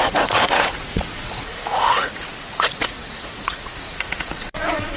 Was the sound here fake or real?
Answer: fake